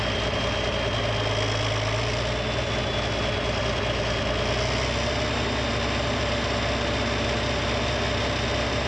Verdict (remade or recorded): recorded